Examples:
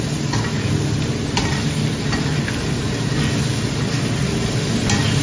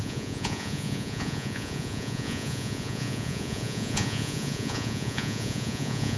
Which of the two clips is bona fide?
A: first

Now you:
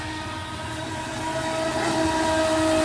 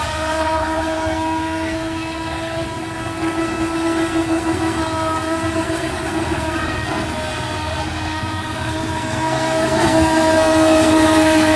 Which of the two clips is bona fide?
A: first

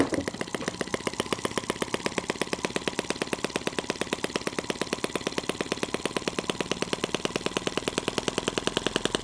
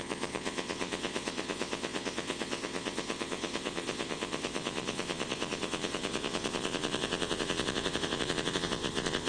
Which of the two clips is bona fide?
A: first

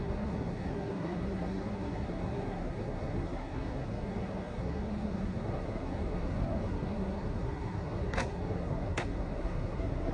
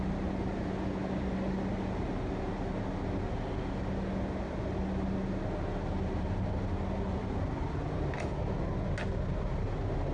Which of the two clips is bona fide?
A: second